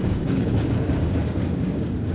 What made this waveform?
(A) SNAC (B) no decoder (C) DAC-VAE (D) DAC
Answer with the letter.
D